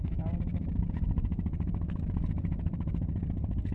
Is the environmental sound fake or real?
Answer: real